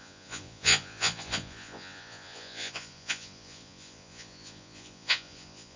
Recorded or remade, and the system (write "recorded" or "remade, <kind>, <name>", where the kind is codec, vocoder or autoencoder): remade, vocoder, Vocos